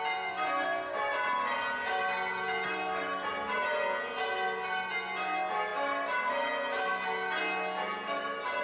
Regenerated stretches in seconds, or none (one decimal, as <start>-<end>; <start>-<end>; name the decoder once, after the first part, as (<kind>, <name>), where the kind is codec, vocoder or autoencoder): none